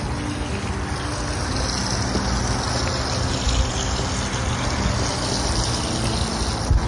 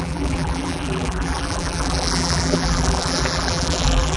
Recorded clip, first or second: first